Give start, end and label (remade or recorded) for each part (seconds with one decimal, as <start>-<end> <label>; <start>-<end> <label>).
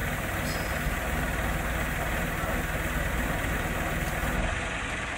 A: 0.0-5.2 recorded